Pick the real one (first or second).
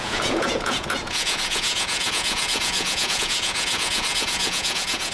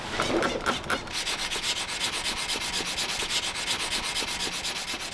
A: second